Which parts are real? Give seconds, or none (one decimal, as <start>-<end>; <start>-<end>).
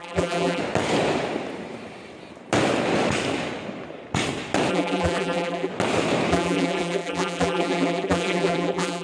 0.6-4.7; 5.7-6.3